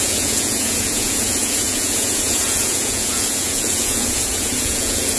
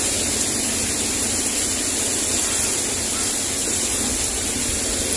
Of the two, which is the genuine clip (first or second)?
second